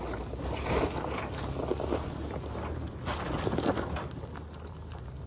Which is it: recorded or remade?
recorded